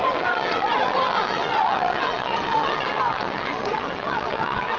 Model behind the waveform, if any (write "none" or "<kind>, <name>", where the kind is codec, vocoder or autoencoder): vocoder, WaveNeXt